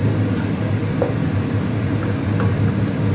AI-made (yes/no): no